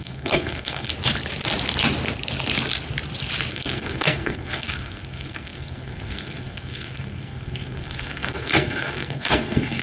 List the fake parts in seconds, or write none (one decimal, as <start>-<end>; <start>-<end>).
0.0-0.9; 3.5-9.8

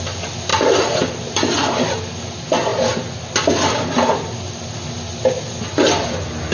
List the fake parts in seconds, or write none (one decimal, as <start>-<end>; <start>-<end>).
none

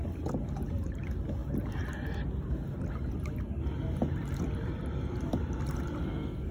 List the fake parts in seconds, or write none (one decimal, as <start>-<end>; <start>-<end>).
6.0-6.5

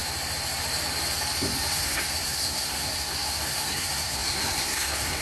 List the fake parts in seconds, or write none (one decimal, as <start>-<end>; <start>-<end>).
1.7-5.2

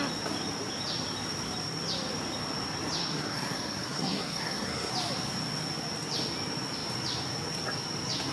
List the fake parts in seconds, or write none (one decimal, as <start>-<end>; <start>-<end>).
3.0-4.9

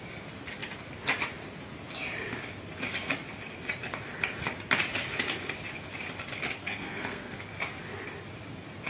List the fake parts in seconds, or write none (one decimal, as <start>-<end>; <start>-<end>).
6.6-7.4